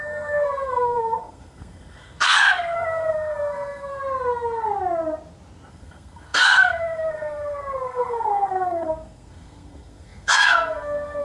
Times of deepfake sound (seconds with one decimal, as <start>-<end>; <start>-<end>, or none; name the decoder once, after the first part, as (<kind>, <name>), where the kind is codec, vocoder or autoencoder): 0.0-4.0 (codec, SNAC); 5.7-11.2